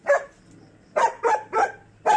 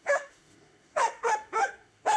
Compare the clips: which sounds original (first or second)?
first